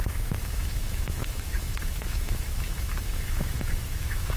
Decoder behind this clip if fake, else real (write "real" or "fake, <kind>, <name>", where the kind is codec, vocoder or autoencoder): fake, autoencoder, DAC-VAE